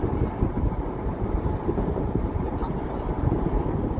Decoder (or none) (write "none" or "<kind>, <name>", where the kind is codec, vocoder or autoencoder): vocoder, BigVGAN v2